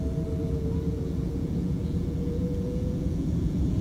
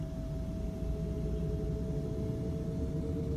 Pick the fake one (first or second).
first